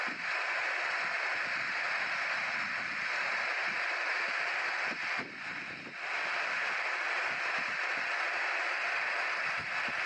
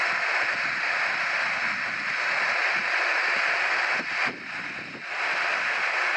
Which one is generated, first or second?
first